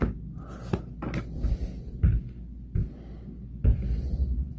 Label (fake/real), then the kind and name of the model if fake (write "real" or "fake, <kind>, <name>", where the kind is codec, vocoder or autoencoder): real